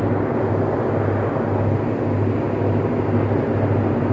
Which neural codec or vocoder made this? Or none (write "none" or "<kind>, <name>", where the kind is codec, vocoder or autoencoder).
none